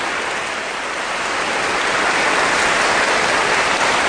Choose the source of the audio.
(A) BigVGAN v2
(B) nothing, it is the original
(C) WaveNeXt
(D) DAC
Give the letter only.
B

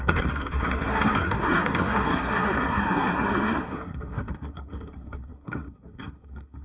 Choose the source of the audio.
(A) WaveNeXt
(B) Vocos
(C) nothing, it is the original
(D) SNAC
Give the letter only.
D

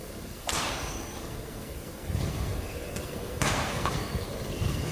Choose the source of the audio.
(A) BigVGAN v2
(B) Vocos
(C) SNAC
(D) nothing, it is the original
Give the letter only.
C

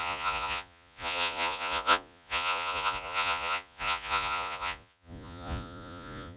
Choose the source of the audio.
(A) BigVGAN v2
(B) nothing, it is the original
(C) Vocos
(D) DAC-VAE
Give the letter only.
C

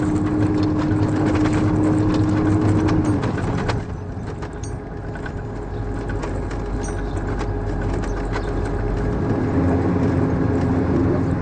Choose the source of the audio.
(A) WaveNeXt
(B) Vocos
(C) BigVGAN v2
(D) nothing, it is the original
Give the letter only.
D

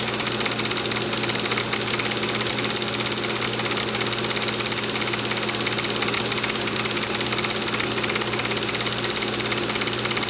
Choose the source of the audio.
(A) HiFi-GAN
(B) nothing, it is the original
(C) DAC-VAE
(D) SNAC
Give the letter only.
B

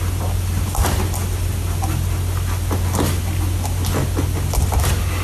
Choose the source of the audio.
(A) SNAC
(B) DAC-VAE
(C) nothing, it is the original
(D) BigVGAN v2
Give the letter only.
C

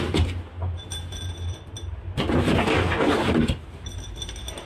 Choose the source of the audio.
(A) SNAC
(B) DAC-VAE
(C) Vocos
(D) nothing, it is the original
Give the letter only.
D